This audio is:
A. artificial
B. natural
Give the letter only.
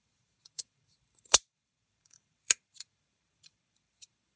A